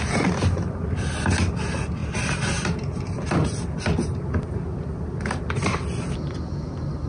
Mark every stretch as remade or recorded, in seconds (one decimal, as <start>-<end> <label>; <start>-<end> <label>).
0.0-7.1 recorded